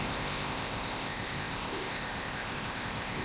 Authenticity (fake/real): fake